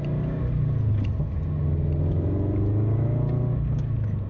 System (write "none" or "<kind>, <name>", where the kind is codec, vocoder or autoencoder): none